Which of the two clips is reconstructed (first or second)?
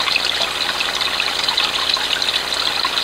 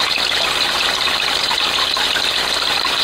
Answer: second